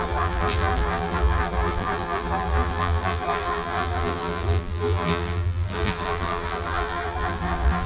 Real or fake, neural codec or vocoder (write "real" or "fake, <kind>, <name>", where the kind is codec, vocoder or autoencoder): fake, vocoder, BigVGAN v2